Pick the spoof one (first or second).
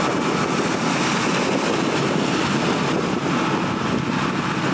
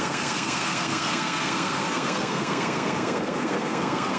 second